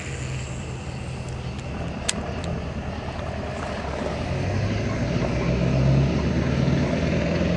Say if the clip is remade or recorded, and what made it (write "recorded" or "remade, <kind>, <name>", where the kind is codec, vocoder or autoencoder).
recorded